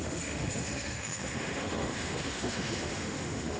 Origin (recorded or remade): remade